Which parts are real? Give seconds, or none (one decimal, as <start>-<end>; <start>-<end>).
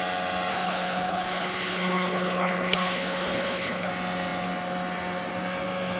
0.0-0.5; 3.9-6.0